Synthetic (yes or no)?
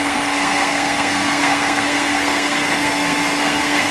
yes